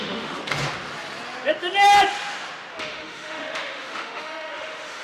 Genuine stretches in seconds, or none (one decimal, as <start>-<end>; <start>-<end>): 0.4-2.7